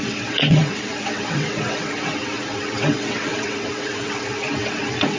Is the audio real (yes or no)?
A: no